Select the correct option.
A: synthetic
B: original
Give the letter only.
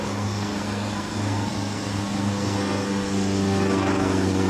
A